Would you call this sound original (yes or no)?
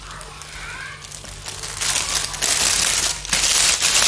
yes